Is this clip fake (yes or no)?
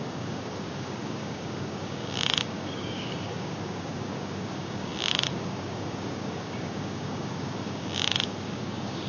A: yes